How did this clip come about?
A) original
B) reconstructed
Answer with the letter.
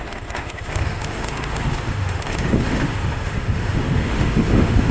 B